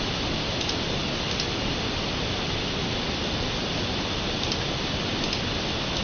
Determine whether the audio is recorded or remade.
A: recorded